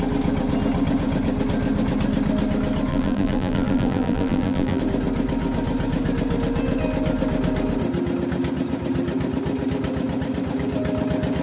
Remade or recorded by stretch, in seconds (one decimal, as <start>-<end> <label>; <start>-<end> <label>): 0.0-2.9 recorded; 2.9-4.8 remade; 4.8-11.4 recorded